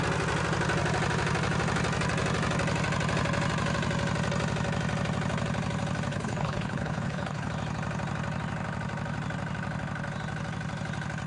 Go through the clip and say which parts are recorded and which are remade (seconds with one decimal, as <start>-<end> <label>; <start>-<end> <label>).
0.0-6.1 recorded; 6.1-7.5 remade; 7.5-11.3 recorded